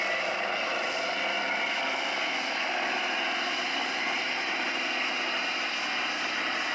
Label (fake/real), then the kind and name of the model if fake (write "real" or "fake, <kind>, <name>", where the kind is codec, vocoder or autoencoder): real